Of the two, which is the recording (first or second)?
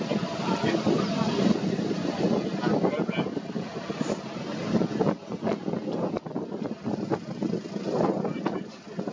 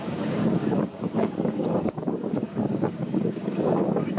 first